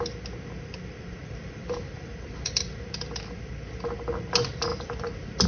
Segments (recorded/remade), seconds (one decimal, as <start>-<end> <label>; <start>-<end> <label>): 0.0-1.2 recorded; 1.2-3.5 remade; 3.5-5.5 recorded